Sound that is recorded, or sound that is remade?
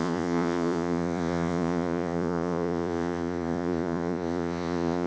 remade